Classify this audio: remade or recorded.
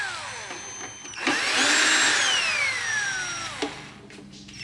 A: recorded